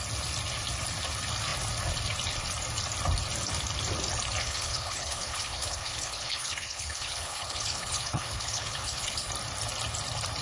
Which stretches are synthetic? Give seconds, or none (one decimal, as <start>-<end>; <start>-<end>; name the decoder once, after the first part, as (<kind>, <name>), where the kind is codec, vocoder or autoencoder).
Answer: 4.4-9.3 (codec, HILCodec)